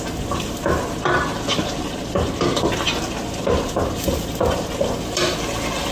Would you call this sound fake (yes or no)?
no